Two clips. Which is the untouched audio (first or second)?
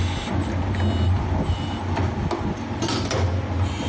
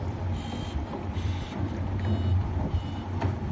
first